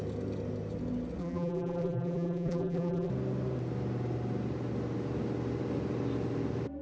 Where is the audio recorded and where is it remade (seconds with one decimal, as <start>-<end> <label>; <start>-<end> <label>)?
0.0-1.2 recorded; 1.2-3.1 remade; 3.1-6.8 recorded